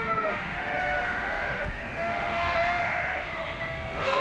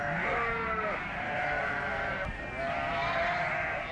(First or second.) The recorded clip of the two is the second